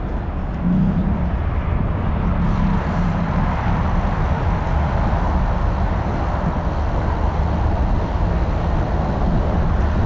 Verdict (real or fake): real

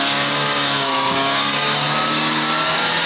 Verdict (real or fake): fake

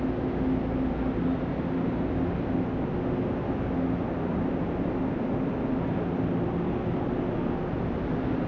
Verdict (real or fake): real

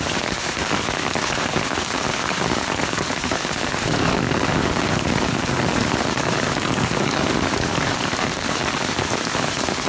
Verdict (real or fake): fake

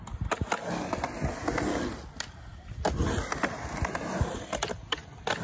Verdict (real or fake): real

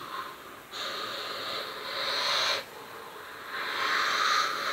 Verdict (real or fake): real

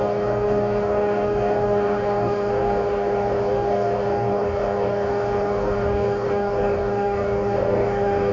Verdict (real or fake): fake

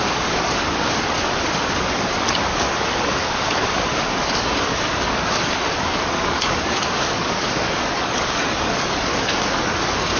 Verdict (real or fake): fake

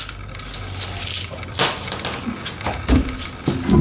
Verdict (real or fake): real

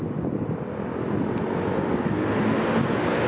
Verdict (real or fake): real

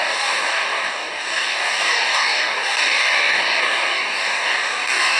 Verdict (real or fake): fake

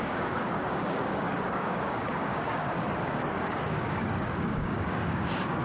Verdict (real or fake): fake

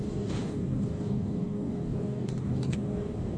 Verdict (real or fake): fake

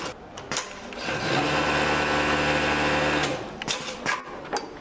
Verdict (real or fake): real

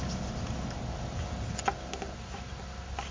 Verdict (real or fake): real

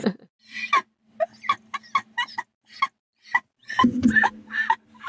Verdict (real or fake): real